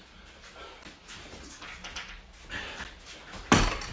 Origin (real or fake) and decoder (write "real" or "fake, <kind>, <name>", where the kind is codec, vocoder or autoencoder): real